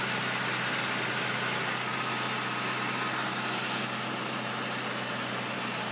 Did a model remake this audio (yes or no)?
no